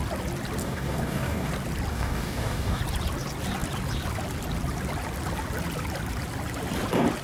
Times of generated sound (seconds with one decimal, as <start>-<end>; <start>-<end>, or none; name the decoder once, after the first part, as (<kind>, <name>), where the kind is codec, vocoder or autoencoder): 0.6-1.5 (codec, DAC); 1.9-2.8